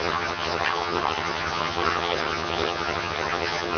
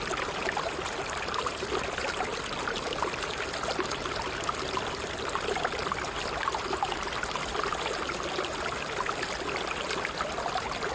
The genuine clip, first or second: second